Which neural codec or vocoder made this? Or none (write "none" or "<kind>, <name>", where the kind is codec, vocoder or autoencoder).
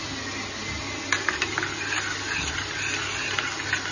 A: none